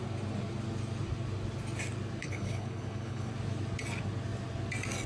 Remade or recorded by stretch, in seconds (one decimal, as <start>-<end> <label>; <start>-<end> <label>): 0.0-2.2 recorded; 2.2-3.3 remade; 3.3-5.1 recorded